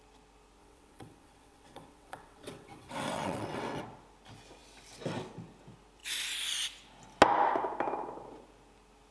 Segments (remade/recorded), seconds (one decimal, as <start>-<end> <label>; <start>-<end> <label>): 0.0-0.6 recorded; 0.6-3.8 remade; 3.8-9.1 recorded